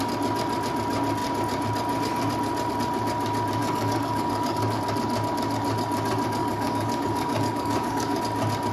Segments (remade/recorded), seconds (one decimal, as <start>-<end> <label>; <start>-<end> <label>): 0.0-3.6 recorded; 3.6-4.8 remade; 4.8-6.4 recorded; 6.4-8.2 remade; 8.2-8.7 recorded